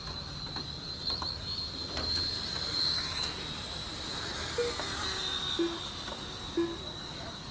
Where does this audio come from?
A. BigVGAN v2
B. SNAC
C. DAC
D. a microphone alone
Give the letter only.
D